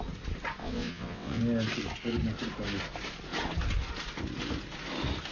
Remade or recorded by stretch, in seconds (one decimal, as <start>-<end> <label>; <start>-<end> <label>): 0.0-0.6 recorded; 0.6-1.4 remade; 1.4-5.3 recorded